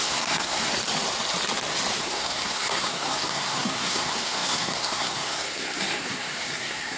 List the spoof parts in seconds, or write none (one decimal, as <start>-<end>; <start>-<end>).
0.0-0.7; 2.0-7.0